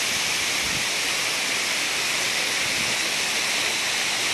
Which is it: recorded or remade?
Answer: recorded